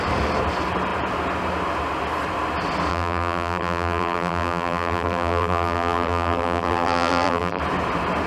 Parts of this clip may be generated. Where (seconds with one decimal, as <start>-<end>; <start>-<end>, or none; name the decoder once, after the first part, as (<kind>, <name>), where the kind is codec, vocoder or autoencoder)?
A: 2.9-7.6 (vocoder, BigVGAN v2)